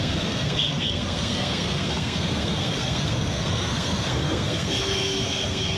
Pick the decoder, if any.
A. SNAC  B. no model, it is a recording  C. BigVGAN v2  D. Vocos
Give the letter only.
A